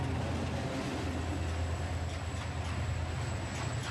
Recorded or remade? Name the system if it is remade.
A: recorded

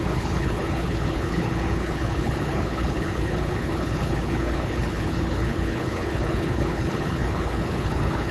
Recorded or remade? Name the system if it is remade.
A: remade, codec, HILCodec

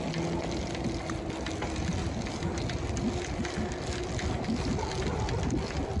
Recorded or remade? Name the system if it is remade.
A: recorded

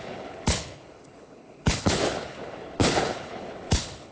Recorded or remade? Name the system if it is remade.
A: remade, codec, HILCodec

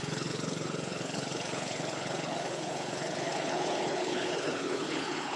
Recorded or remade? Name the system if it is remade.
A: remade, codec, HILCodec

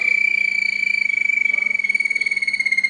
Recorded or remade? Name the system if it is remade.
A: recorded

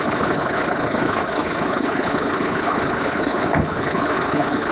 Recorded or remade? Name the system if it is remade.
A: remade, codec, HILCodec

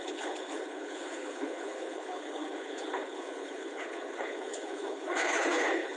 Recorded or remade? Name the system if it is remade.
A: remade, codec, HILCodec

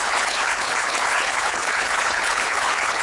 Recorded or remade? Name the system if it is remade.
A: remade, codec, HILCodec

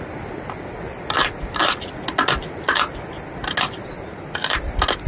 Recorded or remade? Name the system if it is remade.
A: recorded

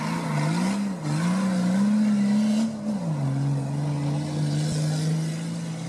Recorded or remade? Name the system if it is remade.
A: recorded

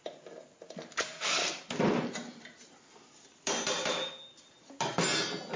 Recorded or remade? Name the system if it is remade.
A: recorded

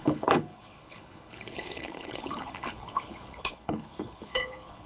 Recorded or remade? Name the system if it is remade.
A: remade, codec, HILCodec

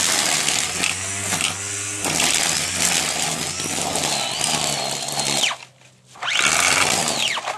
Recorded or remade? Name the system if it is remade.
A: recorded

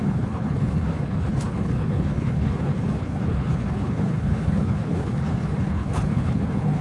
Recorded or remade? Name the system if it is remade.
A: remade, codec, HILCodec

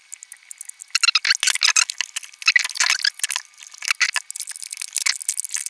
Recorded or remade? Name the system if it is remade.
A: recorded